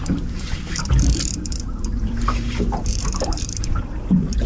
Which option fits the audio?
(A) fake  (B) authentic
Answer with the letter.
A